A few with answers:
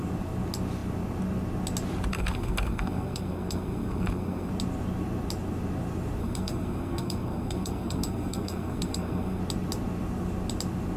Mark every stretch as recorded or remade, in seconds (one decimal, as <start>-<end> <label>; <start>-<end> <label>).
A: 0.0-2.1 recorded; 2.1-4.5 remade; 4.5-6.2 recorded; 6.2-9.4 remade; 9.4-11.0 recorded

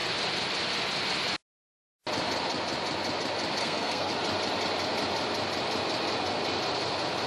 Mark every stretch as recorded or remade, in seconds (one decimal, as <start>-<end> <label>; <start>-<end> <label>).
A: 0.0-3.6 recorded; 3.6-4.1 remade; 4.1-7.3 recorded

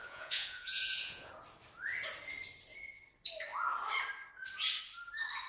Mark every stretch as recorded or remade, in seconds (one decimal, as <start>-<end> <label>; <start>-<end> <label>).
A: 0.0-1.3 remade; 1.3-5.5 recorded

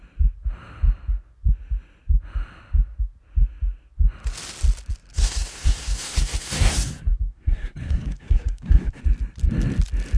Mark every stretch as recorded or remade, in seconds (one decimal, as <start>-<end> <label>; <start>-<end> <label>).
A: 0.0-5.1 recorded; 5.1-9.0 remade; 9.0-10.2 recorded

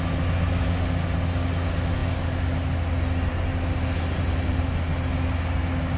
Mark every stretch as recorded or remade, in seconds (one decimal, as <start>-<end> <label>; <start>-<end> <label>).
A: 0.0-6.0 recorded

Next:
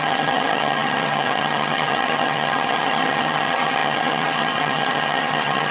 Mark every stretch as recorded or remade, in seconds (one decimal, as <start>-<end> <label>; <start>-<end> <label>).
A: 0.0-5.7 remade

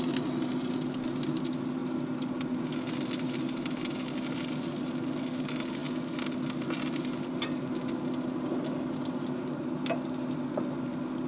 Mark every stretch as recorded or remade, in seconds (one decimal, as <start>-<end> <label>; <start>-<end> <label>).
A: 0.0-11.3 recorded

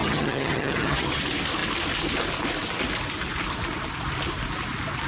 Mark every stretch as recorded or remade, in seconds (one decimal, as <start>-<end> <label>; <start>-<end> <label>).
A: 0.0-1.2 remade; 1.2-5.1 recorded